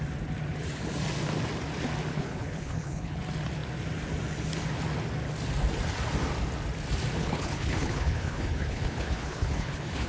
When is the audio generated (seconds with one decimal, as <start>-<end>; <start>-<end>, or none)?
2.1-3.2; 7.2-10.1